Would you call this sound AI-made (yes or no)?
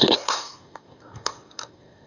yes